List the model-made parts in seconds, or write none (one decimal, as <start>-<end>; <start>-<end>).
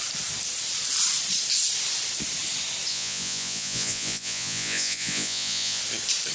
2.9-5.8